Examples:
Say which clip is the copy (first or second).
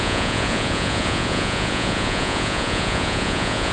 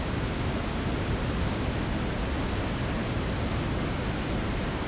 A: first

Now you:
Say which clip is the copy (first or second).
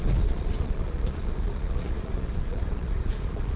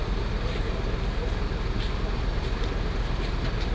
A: first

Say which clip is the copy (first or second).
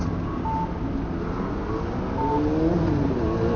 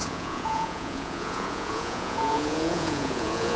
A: second